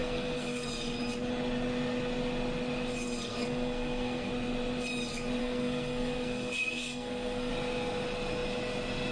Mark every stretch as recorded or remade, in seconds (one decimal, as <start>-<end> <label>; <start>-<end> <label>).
0.0-0.7 remade; 0.7-3.3 recorded; 3.3-4.3 remade; 4.3-5.4 recorded; 5.4-7.5 remade; 7.5-9.1 recorded